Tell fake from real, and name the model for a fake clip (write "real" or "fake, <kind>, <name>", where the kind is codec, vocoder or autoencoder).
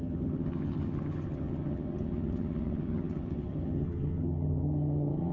fake, vocoder, HiFi-GAN